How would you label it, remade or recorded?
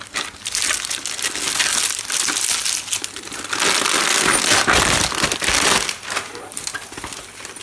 recorded